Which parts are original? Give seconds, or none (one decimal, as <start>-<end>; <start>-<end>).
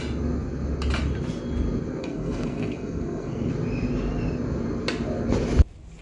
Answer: 0.0-2.0; 3.5-6.0